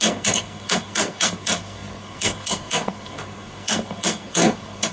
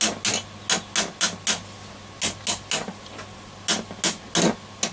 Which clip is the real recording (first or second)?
second